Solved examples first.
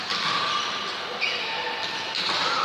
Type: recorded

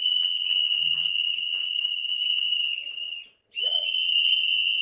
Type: remade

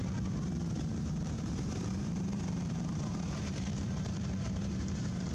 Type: remade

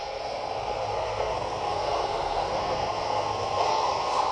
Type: remade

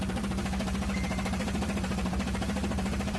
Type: remade